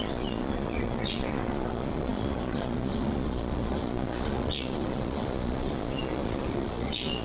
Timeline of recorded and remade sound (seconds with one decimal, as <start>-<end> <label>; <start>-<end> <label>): 0.0-7.2 remade